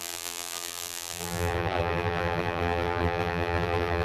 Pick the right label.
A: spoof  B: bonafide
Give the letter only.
A